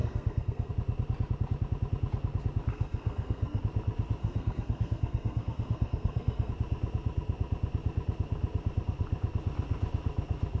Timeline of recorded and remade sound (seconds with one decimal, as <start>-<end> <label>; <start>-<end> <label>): 0.0-0.7 remade; 0.7-2.7 recorded; 2.7-3.6 remade; 3.6-4.2 recorded; 4.2-6.5 remade; 6.5-10.6 recorded